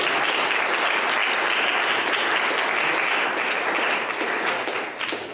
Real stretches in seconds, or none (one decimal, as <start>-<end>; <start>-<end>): 0.0-5.3